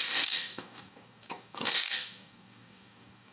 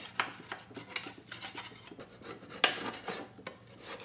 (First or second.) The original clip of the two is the second